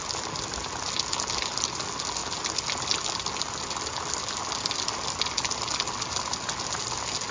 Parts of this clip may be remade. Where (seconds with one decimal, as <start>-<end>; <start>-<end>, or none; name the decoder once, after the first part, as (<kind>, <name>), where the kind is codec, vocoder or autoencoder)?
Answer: none